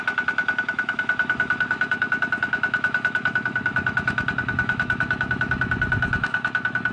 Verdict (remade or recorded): remade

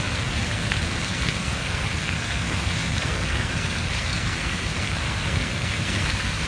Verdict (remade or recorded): remade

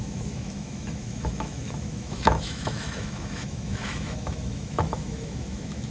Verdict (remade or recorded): remade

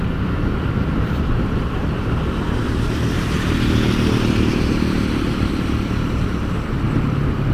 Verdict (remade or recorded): remade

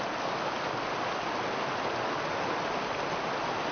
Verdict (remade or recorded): recorded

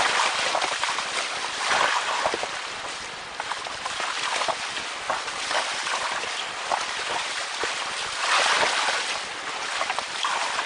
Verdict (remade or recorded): recorded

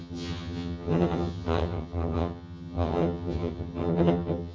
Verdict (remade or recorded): remade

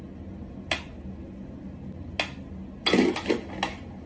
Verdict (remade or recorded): recorded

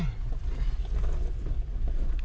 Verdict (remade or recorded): recorded